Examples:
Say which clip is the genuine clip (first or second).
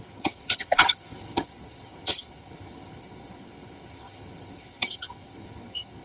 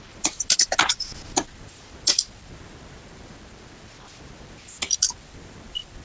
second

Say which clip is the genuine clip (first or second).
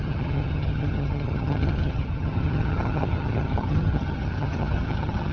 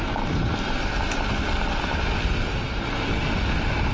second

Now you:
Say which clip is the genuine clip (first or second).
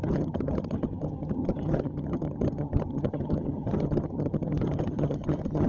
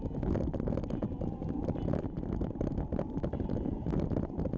second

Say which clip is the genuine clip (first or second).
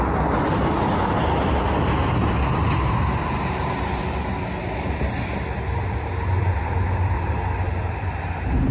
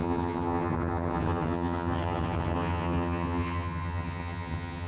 first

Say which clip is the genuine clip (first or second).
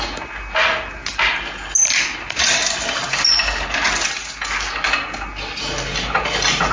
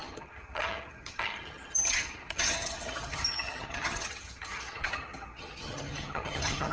first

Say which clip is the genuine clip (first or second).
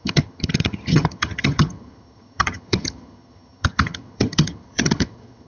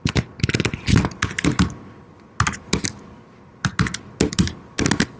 second